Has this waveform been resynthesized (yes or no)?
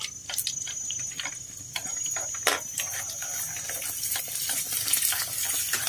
yes